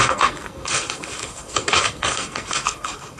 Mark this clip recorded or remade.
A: remade